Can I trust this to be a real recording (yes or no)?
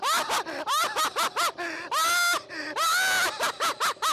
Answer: yes